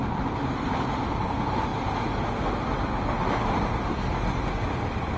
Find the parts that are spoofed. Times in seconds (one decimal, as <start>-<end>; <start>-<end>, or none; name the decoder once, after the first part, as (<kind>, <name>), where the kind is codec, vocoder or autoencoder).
none